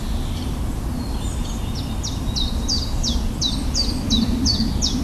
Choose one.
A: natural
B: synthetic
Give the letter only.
A